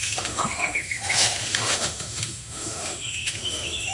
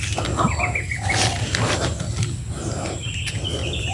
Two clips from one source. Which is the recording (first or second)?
second